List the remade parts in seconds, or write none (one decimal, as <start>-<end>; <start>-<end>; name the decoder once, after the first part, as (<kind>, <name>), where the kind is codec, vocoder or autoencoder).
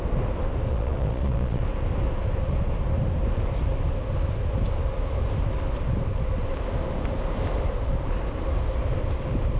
0.7-1.6 (vocoder, Vocos)